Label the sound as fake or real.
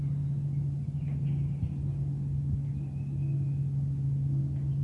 real